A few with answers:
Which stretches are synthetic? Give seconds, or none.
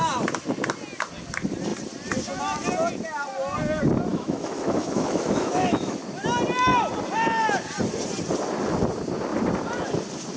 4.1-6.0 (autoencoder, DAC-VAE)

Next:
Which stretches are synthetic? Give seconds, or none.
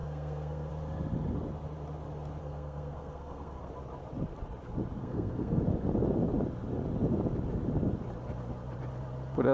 0.0-0.7 (codec, SNAC); 2.4-3.7; 5.0-5.6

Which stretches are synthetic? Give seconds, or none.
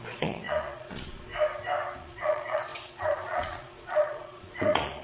0.0-1.3 (vocoder, Vocos); 2.0-5.0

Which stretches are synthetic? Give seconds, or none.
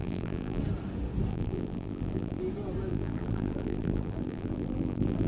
0.0-0.6 (vocoder, BigVGAN v2); 1.3-2.4; 2.9-5.3